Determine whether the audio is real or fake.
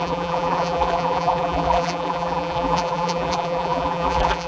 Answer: fake